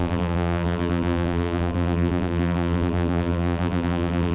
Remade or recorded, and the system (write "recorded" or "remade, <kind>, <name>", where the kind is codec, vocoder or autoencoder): remade, vocoder, BigVGAN v2